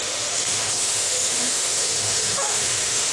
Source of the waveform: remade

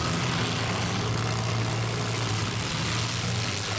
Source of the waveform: recorded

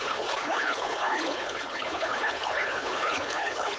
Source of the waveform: remade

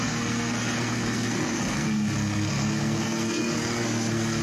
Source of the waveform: remade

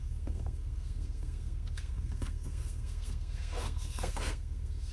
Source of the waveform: remade